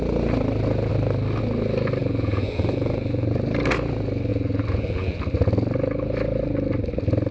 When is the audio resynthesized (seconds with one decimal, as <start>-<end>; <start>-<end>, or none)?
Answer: 2.0-3.3; 4.3-5.2